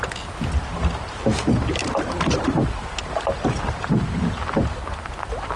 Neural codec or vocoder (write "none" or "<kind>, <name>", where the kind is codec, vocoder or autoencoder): none